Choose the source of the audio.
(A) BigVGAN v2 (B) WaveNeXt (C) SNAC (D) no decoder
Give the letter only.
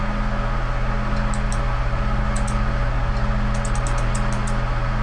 D